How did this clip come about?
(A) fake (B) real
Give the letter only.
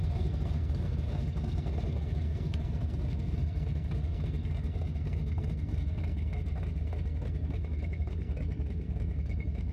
A